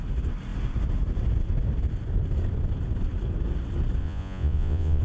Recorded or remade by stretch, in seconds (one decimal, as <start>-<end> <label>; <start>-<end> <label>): 0.0-4.0 recorded; 4.0-5.0 remade